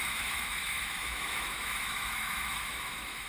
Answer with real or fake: fake